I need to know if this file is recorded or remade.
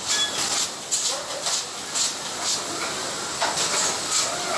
recorded